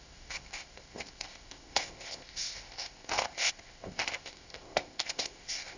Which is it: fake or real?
fake